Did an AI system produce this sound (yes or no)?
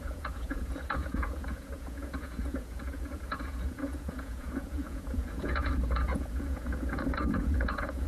yes